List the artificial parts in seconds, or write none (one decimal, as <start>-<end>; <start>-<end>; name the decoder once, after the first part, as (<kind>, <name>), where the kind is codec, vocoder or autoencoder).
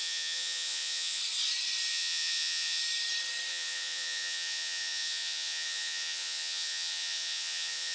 0.0-1.2 (vocoder, Vocos); 1.9-2.8; 3.5-7.9